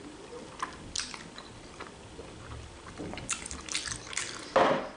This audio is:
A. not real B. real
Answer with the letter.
B